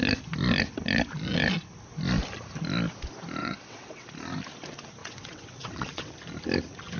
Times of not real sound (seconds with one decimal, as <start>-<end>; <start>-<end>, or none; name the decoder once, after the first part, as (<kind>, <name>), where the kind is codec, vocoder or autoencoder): 3.4-4.1 (vocoder, WaveNeXt); 5.0-6.1